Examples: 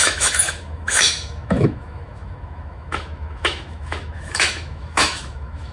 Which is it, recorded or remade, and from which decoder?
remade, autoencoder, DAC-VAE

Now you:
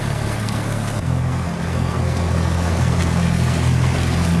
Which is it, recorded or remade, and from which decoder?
remade, codec, SNAC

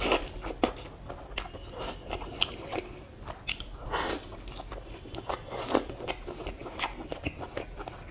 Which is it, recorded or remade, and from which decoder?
recorded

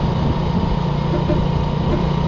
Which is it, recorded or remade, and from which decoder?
recorded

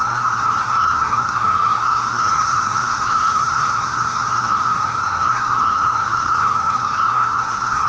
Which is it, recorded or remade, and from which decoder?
remade, codec, SNAC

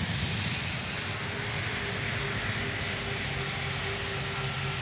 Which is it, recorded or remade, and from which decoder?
recorded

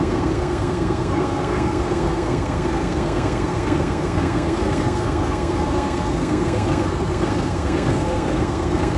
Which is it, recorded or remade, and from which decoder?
remade, codec, SNAC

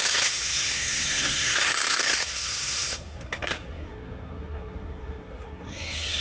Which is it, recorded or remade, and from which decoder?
remade, codec, SNAC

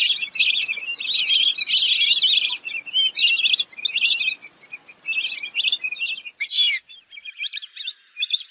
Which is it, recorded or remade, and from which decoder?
recorded